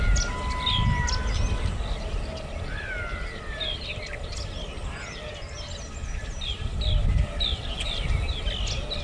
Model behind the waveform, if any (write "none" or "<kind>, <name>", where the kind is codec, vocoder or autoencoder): none